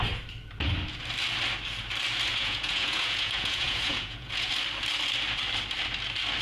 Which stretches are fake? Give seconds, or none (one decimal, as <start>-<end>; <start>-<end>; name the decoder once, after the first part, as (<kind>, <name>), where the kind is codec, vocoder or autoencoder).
2.3-4.5 (vocoder, Vocos)